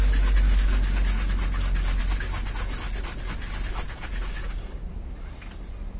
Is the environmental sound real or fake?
real